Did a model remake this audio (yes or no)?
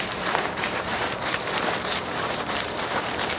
yes